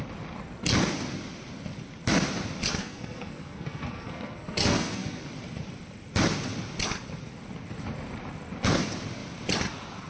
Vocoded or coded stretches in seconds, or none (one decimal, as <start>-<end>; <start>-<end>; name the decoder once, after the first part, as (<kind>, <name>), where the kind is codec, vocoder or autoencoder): 2.8-5.2 (codec, SNAC)